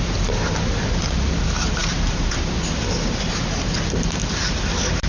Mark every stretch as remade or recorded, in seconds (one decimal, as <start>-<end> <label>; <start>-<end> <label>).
0.0-5.1 remade